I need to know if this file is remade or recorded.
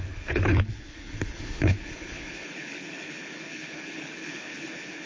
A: remade